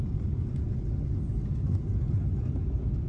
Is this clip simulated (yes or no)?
no